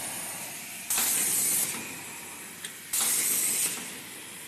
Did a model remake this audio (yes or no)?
no